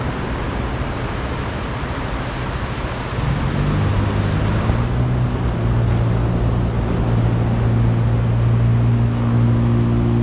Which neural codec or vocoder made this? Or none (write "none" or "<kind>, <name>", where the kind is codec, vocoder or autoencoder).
none